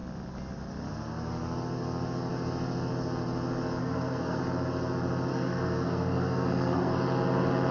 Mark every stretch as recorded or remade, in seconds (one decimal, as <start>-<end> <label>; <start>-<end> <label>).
0.0-3.8 recorded; 3.8-4.4 remade; 4.4-5.3 recorded; 5.3-6.9 remade; 6.9-7.7 recorded